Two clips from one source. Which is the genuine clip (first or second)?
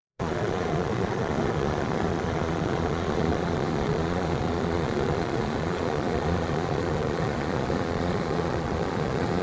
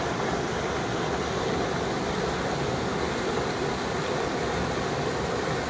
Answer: second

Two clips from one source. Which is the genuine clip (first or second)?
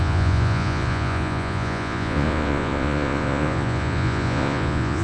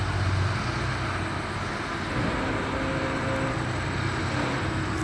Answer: second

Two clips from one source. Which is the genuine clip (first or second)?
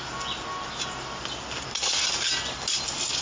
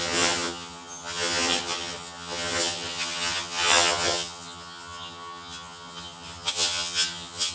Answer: first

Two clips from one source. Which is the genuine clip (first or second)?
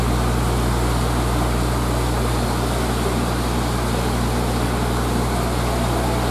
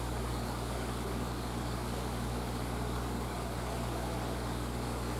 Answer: first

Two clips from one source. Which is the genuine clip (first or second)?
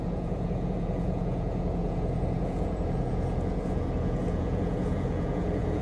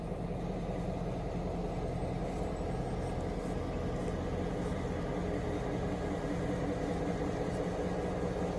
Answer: second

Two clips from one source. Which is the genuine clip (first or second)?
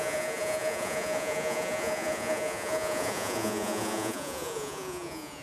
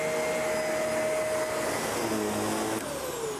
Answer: second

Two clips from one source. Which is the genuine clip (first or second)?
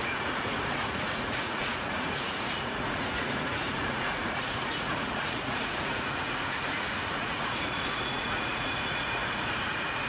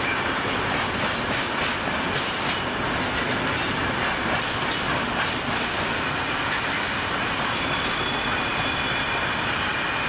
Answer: second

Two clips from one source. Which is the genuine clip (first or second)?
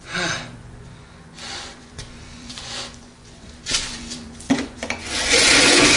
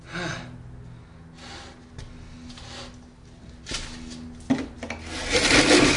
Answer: second